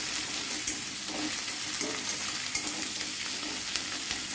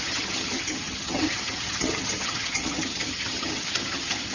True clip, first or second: first